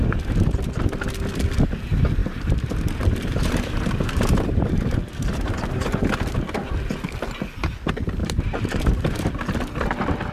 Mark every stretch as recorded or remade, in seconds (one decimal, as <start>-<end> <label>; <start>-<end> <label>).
0.0-2.2 recorded; 2.2-6.1 remade; 6.1-8.2 recorded; 8.2-9.3 remade; 9.3-10.3 recorded